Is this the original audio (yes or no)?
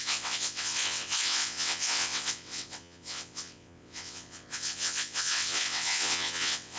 no